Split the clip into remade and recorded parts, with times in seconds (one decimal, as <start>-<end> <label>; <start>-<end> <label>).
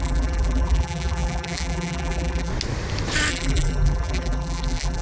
0.0-2.5 remade; 2.5-3.3 recorded; 3.3-5.0 remade